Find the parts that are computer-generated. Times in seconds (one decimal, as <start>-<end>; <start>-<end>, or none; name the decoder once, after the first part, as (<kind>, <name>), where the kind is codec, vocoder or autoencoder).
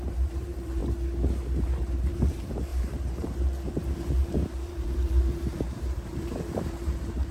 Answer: 0.0-0.8 (vocoder, BigVGAN v2); 2.0-7.3